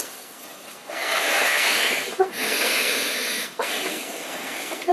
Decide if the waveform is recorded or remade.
remade